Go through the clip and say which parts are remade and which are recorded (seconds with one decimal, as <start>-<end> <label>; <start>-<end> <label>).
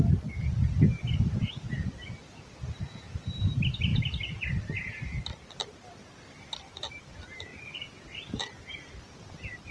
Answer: 0.0-9.7 recorded